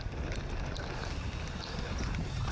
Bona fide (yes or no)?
yes